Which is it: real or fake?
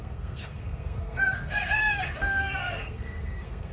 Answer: fake